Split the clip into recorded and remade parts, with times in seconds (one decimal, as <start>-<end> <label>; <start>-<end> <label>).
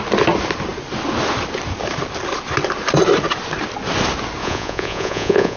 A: 0.0-4.4 recorded; 4.4-5.6 remade